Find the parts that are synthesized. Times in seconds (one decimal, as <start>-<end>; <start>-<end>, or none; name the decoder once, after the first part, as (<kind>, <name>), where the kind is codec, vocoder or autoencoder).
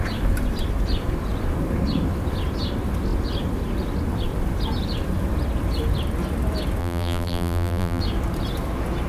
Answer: 6.8-8.0 (vocoder, BigVGAN v2)